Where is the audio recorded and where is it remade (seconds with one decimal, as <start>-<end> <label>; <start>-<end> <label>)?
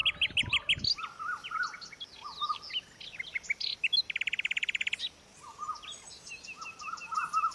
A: 0.0-7.5 recorded